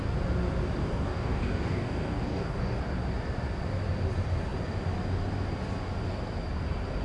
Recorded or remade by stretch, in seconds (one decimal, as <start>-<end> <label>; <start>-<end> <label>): 0.0-0.8 recorded; 0.8-2.8 remade; 2.8-7.0 recorded